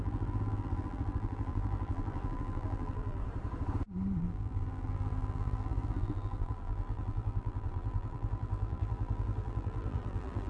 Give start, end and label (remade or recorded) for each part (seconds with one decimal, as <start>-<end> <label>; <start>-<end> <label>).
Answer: 0.0-3.2 remade; 3.2-4.2 recorded; 4.2-10.5 remade